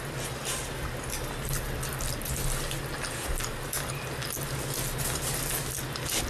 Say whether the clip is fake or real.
real